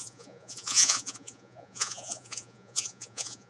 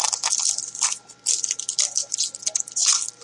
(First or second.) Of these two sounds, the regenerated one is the first